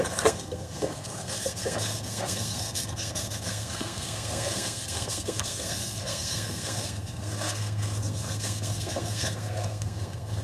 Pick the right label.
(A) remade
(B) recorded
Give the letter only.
A